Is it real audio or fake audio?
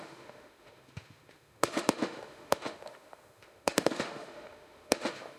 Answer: fake